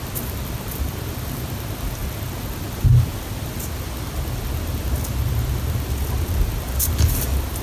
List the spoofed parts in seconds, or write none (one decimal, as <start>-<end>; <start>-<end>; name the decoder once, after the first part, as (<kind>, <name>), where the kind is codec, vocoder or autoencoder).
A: none

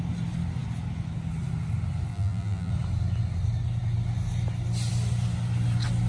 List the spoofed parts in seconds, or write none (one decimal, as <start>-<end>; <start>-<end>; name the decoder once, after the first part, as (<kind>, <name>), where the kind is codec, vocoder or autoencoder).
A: 2.1-2.7 (vocoder, BigVGAN v2)

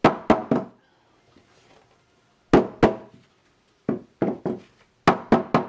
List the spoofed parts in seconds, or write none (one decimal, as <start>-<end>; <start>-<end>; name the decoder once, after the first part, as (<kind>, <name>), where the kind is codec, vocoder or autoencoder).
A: 3.4-4.4 (vocoder, BigVGAN v2)

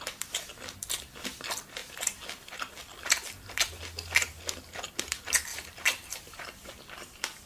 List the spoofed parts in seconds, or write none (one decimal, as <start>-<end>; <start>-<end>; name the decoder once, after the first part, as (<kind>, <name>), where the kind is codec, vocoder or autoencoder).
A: 5.5-6.7 (vocoder, BigVGAN v2)

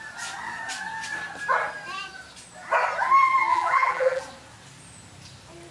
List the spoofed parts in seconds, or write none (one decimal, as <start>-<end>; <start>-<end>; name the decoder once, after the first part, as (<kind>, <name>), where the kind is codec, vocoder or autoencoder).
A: 3.5-4.2 (vocoder, BigVGAN v2)